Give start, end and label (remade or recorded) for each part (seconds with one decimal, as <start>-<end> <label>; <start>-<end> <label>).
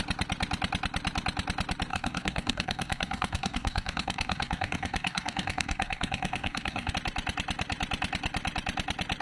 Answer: 0.0-1.9 recorded; 1.9-6.9 remade; 6.9-9.2 recorded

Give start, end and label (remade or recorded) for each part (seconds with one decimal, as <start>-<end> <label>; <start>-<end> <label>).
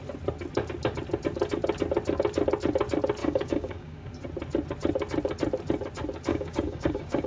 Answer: 0.0-3.2 recorded; 3.2-4.1 remade; 4.1-6.3 recorded; 6.3-7.3 remade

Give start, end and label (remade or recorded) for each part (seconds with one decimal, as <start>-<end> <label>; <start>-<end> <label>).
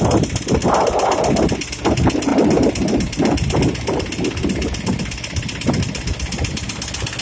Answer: 0.0-7.2 recorded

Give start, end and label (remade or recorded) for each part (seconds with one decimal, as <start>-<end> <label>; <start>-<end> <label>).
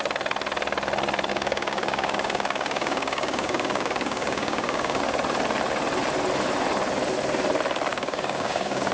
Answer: 0.0-1.3 recorded; 1.3-5.0 remade; 5.0-7.9 recorded; 7.9-8.9 remade